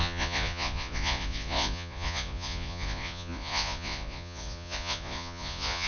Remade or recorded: remade